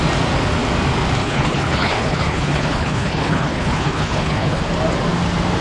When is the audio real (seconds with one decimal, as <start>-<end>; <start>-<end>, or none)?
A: 0.0-1.2; 4.6-5.6